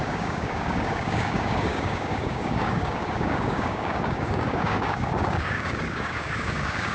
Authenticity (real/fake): fake